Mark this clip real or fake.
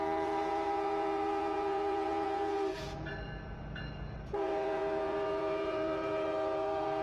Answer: fake